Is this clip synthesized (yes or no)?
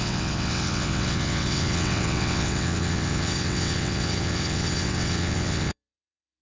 yes